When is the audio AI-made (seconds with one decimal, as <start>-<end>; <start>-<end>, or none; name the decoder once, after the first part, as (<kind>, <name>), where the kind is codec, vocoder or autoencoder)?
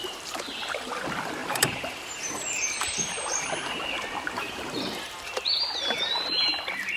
0.0-0.9 (vocoder, BigVGAN v2); 1.4-5.4